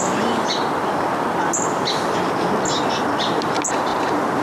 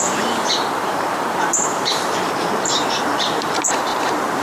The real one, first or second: first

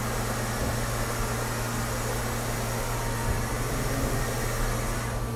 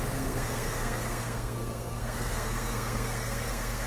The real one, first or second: first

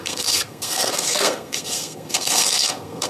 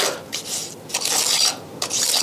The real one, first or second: second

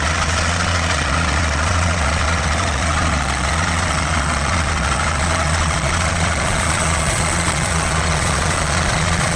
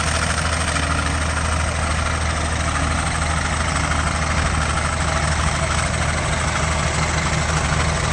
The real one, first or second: second